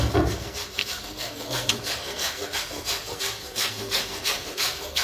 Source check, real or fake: fake